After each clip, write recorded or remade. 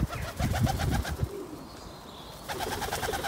recorded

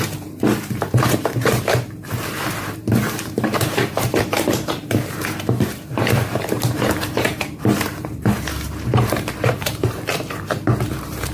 remade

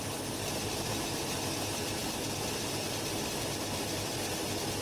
remade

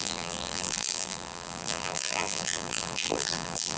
remade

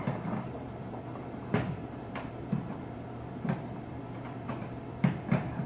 remade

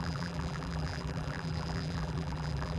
remade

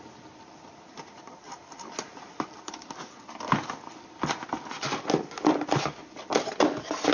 recorded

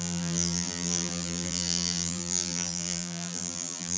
remade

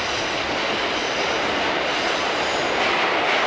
recorded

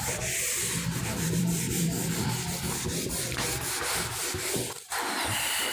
remade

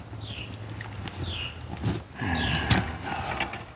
recorded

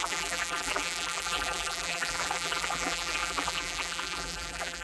remade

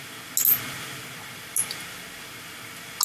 recorded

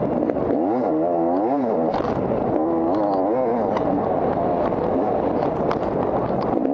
recorded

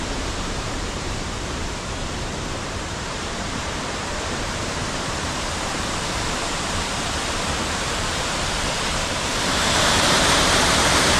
remade